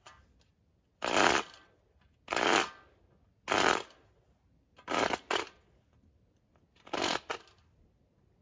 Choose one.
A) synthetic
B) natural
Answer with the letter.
B